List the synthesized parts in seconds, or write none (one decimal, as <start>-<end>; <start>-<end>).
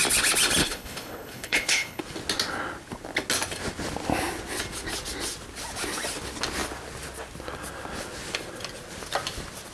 0.6-2.0